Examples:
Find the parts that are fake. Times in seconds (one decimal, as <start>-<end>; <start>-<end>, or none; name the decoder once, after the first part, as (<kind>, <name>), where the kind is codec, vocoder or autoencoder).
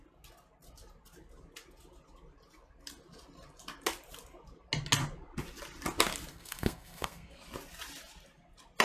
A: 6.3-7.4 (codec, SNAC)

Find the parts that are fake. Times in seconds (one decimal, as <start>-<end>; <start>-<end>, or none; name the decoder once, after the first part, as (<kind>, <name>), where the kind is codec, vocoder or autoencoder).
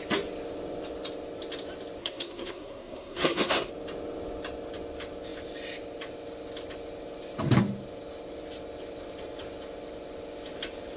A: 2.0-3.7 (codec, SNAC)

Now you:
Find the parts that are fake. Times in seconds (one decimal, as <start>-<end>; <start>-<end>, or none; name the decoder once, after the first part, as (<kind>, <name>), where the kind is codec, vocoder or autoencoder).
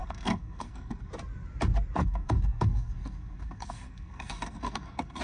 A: 0.0-1.1 (codec, SNAC); 2.0-5.2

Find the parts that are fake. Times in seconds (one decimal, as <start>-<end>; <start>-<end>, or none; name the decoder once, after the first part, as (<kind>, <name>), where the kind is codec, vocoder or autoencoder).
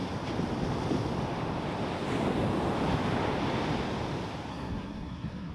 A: 4.5-5.5 (codec, SNAC)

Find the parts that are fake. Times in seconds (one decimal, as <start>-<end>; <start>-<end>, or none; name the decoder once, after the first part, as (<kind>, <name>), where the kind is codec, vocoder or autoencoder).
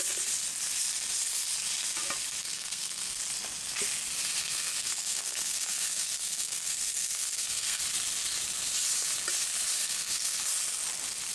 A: 2.4-3.2 (codec, SNAC); 4.4-7.8; 9.8-10.4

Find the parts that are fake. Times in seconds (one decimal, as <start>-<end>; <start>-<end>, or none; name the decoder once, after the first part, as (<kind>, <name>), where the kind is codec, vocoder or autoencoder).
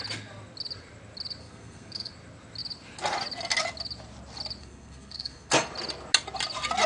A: 1.4-2.1 (codec, SNAC); 4.6-5.5